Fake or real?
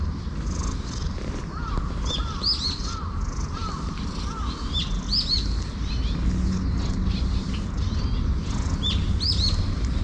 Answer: real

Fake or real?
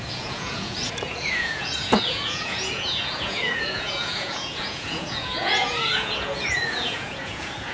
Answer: fake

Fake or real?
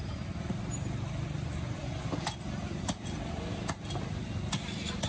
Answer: real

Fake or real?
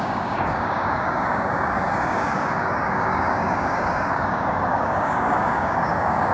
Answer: fake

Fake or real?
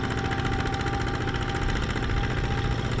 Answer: real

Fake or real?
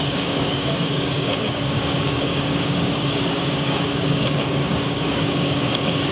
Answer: fake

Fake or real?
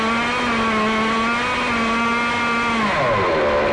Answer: real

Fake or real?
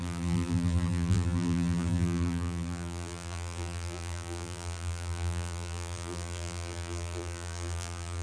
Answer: fake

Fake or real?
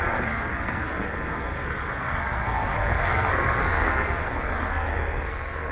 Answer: fake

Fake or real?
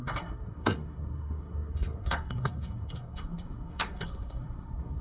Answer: fake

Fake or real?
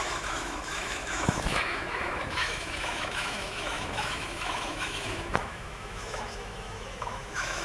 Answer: fake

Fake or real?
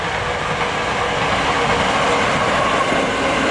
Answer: real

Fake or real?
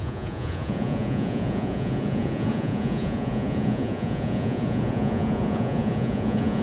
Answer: fake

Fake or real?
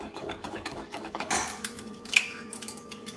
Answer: fake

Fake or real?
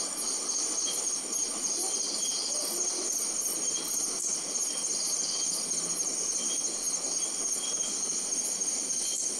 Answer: real